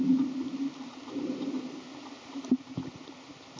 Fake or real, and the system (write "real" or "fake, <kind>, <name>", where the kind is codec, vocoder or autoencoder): real